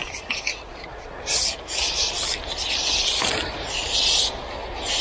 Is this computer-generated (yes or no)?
no